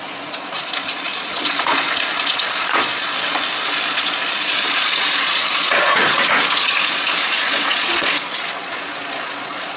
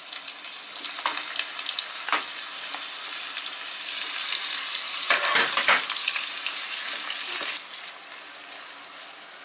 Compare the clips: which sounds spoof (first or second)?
first